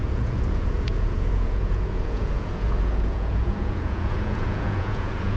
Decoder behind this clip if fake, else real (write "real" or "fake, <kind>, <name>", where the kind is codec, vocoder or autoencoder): fake, vocoder, Vocos